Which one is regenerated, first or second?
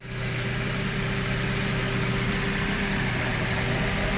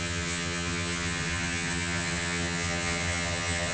second